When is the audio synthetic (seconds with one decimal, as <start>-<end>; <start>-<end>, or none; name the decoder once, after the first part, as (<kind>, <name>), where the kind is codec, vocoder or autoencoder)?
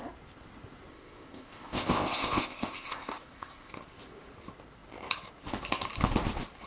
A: 0.9-3.7 (codec, ZipCodec)